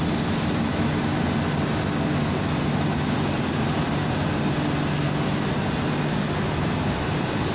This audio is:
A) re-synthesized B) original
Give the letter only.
B